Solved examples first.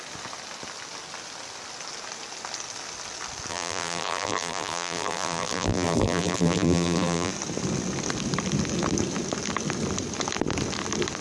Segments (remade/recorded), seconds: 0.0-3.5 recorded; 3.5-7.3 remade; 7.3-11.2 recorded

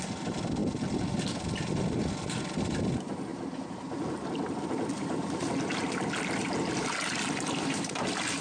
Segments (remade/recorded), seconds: 0.0-8.4 recorded

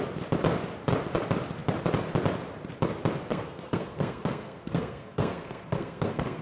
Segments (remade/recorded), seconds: 0.0-3.3 recorded; 3.3-6.4 remade

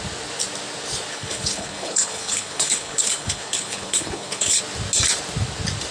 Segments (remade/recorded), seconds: 0.0-1.1 recorded; 1.1-4.6 remade; 4.6-5.9 recorded

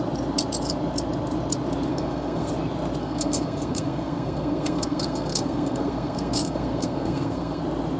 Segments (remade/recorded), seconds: 0.0-1.9 recorded; 1.9-2.5 remade; 2.5-3.0 recorded; 3.0-7.6 remade; 7.6-8.0 recorded

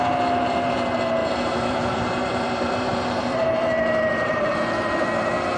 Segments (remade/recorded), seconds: 0.0-1.2 recorded; 1.2-4.6 remade; 4.6-5.6 recorded

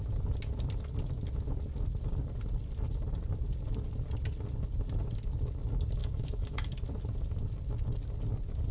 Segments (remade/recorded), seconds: 0.0-6.0 recorded; 6.0-6.7 remade; 6.7-8.7 recorded

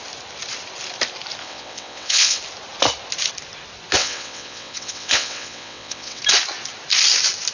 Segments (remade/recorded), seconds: 0.0-1.4 recorded; 1.4-2.4 remade; 2.4-4.0 recorded; 4.0-6.2 remade; 6.2-7.5 recorded